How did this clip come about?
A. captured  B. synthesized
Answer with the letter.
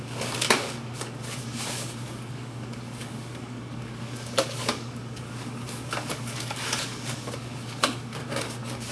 B